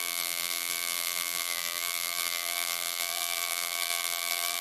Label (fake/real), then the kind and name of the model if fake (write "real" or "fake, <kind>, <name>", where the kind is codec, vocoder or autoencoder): fake, vocoder, BigVGAN v2